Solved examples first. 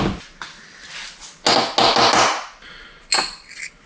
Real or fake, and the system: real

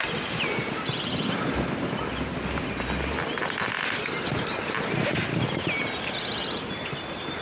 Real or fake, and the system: real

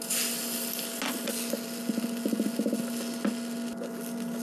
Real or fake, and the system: real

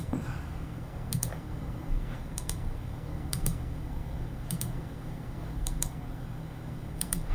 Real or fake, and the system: fake, codec, SNAC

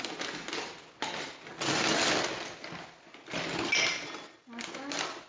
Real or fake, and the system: real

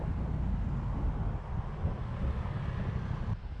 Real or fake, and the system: real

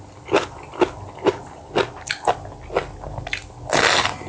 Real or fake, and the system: real